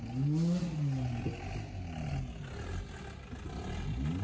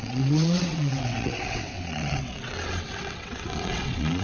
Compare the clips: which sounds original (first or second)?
first